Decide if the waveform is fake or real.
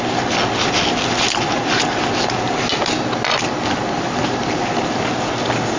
real